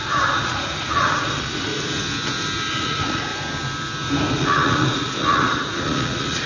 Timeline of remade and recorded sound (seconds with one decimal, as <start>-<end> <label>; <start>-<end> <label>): 0.0-1.7 remade; 1.7-2.7 recorded; 2.7-3.3 remade; 3.3-4.3 recorded; 4.3-6.5 remade